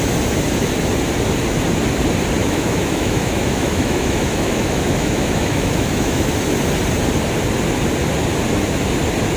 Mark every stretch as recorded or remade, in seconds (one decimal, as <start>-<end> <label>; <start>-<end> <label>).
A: 0.0-2.4 recorded; 2.4-6.3 remade; 6.3-9.4 recorded